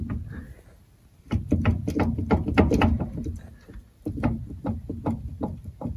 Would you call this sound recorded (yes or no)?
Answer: no